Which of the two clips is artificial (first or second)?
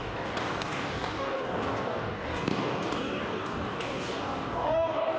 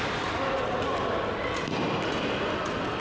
first